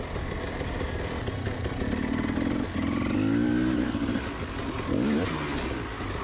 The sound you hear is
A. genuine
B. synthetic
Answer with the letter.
A